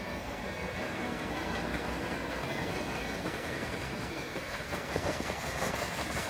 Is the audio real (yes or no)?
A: no